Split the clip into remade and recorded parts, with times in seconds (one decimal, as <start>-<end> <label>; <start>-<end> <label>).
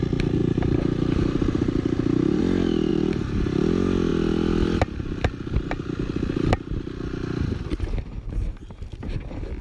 0.0-0.4 recorded; 0.4-2.4 remade; 2.4-2.9 recorded; 2.9-3.4 remade; 3.4-9.6 recorded